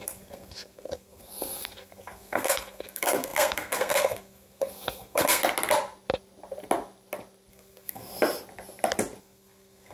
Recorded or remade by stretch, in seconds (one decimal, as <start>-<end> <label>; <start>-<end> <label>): 0.0-5.4 remade; 5.4-7.5 recorded; 7.5-8.1 remade; 8.1-9.2 recorded; 9.2-9.9 remade